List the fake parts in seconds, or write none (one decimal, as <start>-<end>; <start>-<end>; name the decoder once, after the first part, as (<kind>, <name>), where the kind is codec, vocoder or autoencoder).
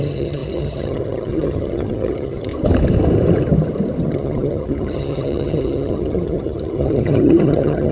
0.0-2.5 (vocoder, HiFi-GAN); 4.0-7.9